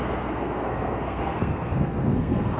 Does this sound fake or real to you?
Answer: fake